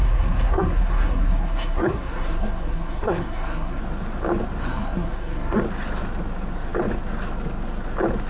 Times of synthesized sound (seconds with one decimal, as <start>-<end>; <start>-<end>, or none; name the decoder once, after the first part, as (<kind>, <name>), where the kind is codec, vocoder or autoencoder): 0.0-3.8 (codec, SNAC); 4.6-5.6